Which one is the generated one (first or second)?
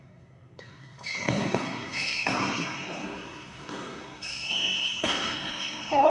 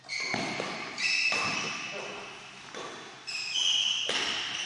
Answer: first